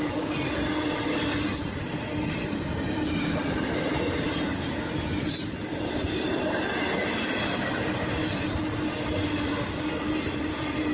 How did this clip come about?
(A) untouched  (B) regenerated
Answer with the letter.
A